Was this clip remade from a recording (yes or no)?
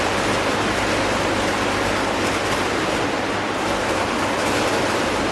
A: no